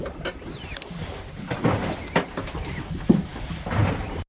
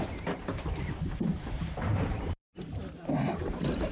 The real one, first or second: first